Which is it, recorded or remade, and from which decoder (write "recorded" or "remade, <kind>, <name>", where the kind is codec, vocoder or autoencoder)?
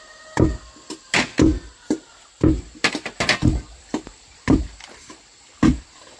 recorded